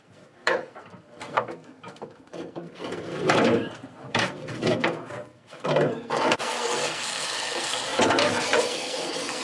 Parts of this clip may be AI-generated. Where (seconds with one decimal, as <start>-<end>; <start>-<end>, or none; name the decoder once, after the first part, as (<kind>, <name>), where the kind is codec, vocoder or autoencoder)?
0.0-9.4 (codec, SNAC)